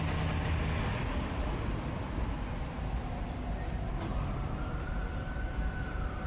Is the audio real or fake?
real